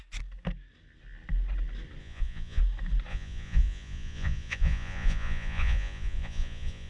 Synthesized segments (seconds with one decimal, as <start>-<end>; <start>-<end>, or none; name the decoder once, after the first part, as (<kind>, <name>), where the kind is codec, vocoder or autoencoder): 2.0-2.6 (vocoder, Vocos); 3.1-6.9